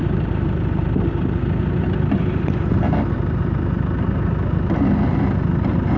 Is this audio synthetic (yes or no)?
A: no